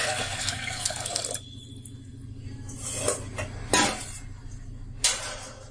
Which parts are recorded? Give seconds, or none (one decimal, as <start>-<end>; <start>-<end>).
1.2-5.7